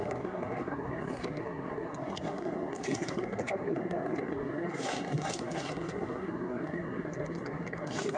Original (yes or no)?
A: no